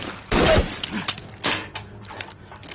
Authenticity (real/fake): real